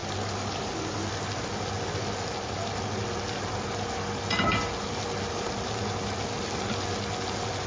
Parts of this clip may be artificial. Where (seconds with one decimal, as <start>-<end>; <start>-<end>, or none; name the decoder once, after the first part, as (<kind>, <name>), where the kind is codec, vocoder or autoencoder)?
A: none